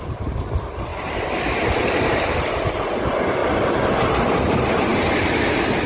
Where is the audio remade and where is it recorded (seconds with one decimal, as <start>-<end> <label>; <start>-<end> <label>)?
0.0-0.9 recorded; 0.9-3.0 remade; 3.0-3.4 recorded; 3.4-4.1 remade; 4.1-5.9 recorded